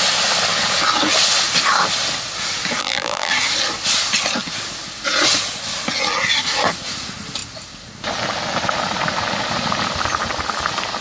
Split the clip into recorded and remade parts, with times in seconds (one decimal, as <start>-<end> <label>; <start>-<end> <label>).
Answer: 0.0-2.8 recorded; 2.8-3.3 remade; 3.3-11.0 recorded